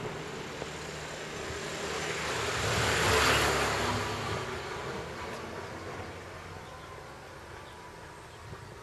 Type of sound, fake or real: real